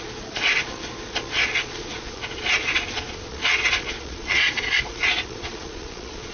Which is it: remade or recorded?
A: remade